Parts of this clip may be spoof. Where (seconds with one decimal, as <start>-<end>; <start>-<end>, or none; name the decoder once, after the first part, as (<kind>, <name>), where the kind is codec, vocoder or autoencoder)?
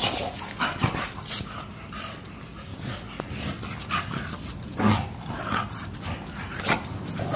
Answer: none